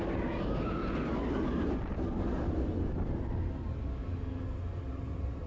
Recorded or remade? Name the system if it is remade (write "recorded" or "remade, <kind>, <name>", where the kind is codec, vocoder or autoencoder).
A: recorded